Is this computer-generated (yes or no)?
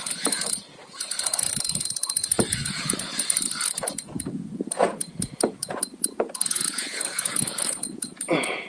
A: yes